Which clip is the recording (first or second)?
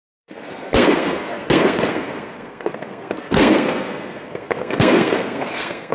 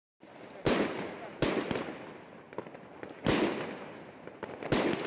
second